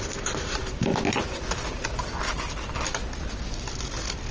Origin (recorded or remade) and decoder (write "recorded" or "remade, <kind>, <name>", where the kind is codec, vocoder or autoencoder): recorded